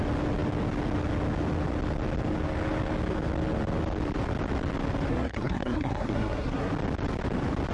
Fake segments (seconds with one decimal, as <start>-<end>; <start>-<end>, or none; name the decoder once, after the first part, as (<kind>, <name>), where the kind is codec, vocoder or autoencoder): 5.1-6.7 (codec, SNAC)